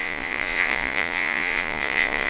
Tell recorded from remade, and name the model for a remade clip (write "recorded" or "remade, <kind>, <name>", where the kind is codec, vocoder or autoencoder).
remade, vocoder, Vocos